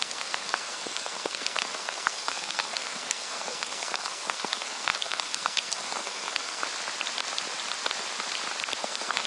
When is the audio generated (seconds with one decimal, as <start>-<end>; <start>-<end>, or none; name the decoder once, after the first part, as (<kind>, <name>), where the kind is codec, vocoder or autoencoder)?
0.0-6.6 (codec, SNAC); 8.8-9.3